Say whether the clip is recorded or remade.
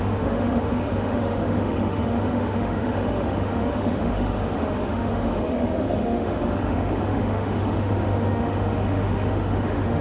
remade